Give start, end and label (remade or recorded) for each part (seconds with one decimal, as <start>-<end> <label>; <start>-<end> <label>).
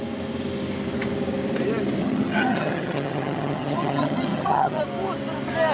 0.0-2.0 recorded; 2.0-4.8 remade; 4.8-5.7 recorded